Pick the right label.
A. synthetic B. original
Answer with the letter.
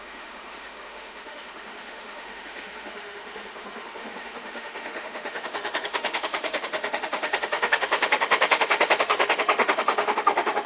A